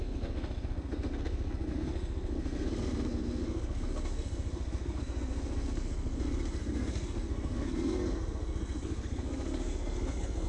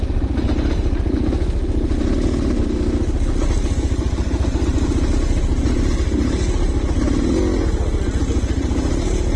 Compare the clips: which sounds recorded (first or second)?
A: second